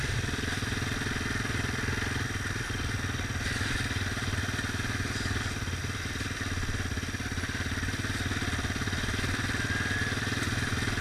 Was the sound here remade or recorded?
recorded